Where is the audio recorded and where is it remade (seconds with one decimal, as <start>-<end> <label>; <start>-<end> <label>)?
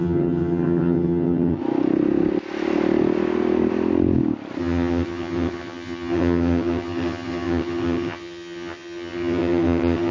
0.0-1.6 remade; 1.6-4.6 recorded; 4.6-10.1 remade